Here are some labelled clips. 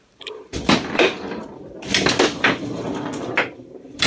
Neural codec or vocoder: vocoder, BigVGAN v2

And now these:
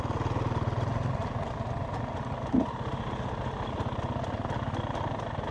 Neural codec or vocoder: none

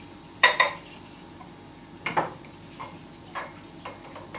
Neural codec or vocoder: vocoder, BigVGAN v2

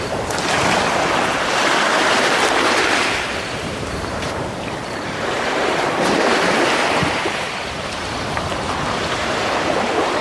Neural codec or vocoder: vocoder, BigVGAN v2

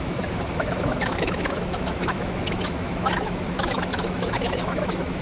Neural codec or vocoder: autoencoder, DAC-VAE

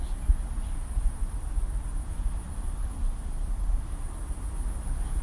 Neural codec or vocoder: none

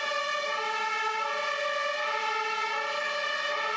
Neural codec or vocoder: none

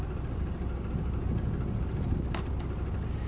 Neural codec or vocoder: none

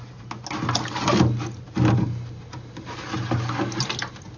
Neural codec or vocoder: none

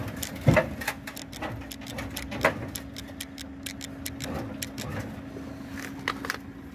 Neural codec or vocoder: none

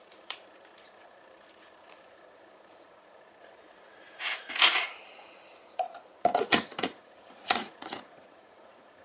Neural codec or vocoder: vocoder, Vocos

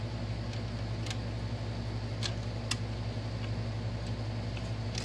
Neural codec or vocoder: none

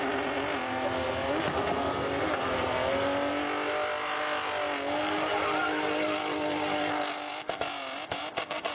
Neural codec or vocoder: none